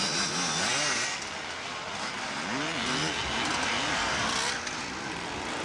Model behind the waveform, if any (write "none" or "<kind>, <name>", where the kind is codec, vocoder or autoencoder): none